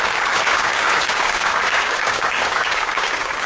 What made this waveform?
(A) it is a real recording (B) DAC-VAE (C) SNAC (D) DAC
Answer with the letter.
D